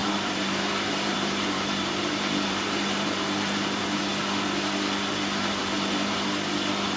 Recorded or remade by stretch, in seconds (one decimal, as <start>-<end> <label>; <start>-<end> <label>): 0.0-4.0 remade; 4.0-5.6 recorded; 5.6-6.1 remade; 6.1-7.0 recorded